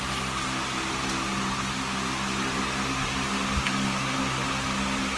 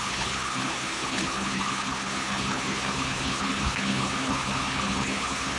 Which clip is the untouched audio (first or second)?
first